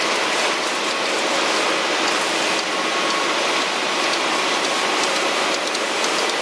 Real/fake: real